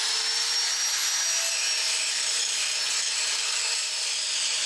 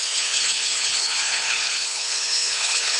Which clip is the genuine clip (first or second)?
first